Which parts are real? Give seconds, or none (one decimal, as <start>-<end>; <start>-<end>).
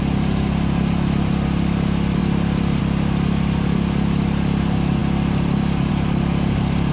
0.0-6.9